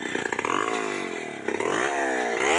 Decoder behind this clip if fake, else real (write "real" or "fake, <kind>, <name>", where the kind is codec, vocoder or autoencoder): real